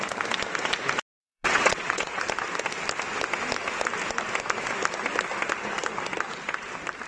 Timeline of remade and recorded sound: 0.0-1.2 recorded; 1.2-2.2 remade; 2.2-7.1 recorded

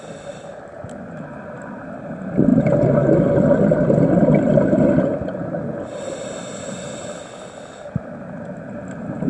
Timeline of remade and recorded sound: 0.0-9.3 recorded

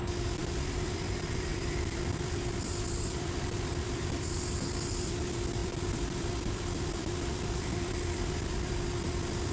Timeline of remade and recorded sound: 0.0-0.4 recorded; 0.4-4.6 remade; 4.6-5.6 recorded; 5.6-8.7 remade; 8.7-9.5 recorded

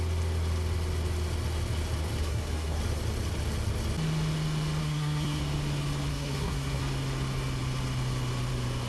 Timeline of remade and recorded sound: 0.0-2.2 recorded; 2.2-2.8 remade; 2.8-4.8 recorded; 4.8-5.4 remade; 5.4-6.1 recorded; 6.1-6.8 remade; 6.8-8.9 recorded